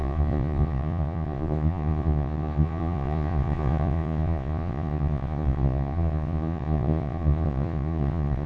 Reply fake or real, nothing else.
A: fake